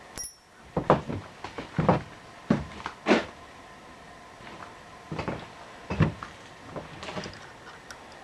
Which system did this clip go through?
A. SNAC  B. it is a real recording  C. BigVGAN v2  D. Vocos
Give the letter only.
B